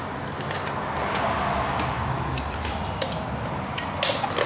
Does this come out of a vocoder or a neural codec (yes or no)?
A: no